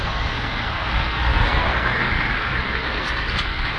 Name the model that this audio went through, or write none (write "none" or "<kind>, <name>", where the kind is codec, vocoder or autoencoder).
codec, SNAC